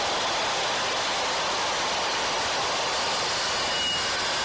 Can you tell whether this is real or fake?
real